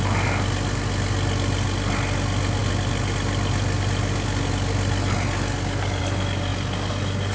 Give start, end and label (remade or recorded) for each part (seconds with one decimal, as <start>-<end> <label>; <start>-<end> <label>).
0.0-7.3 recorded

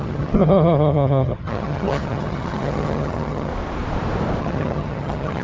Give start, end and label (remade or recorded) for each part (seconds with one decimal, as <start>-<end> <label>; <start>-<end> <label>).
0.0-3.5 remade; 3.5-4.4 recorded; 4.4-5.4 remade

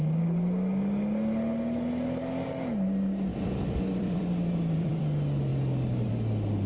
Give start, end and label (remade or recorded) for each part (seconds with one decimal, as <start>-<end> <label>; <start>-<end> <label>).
0.0-3.3 recorded; 3.3-5.0 remade; 5.0-6.7 recorded

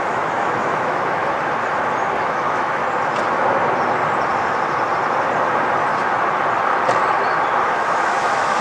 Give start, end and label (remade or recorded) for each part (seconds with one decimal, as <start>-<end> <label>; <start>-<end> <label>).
0.0-1.2 remade; 1.2-2.2 recorded; 2.2-2.8 remade; 2.8-7.6 recorded; 7.6-8.6 remade

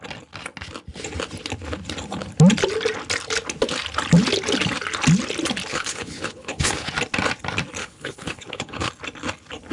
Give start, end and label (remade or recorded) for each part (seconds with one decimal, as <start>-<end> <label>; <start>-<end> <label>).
0.0-5.7 recorded; 5.7-6.9 remade; 6.9-7.8 recorded; 7.8-8.9 remade; 8.9-9.7 recorded